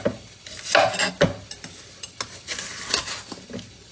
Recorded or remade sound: recorded